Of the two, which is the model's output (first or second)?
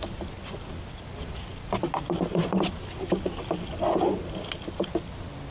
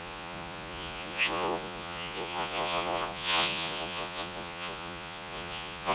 second